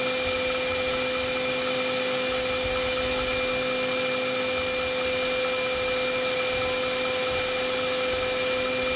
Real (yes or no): yes